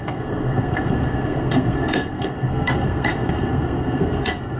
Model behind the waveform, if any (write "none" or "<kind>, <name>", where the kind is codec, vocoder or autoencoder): codec, SNAC